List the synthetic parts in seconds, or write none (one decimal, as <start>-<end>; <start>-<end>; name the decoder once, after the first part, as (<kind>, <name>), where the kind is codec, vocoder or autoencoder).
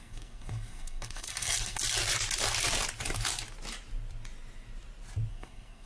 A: 0.0-1.8 (codec, SNAC); 5.3-5.9